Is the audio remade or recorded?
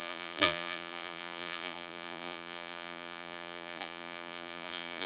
remade